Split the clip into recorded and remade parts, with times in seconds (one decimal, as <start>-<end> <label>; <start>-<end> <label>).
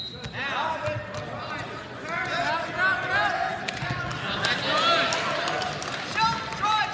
0.0-6.9 recorded